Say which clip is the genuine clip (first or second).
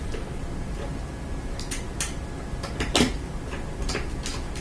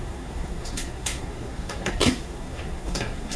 first